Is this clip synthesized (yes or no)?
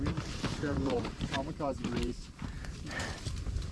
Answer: yes